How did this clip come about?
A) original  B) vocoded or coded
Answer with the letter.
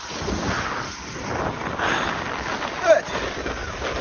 A